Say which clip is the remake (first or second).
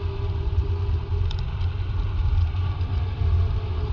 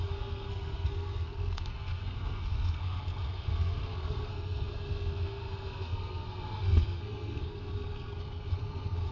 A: second